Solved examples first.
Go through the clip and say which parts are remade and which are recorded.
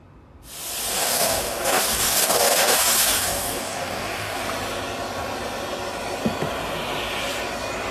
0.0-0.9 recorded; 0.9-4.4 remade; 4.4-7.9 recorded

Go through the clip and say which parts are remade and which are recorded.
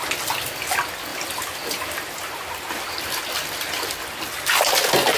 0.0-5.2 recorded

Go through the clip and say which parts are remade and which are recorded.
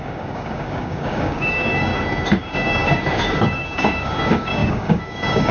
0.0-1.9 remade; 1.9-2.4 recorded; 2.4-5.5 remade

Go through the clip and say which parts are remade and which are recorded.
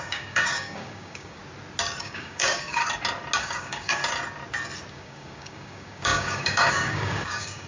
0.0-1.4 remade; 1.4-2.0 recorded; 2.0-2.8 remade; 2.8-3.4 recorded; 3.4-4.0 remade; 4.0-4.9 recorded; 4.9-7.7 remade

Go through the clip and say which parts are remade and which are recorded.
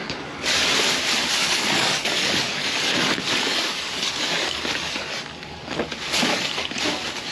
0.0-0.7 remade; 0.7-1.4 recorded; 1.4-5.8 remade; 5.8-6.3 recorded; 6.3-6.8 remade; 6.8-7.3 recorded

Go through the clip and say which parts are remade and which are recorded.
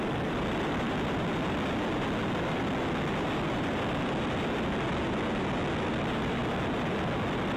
0.0-7.6 recorded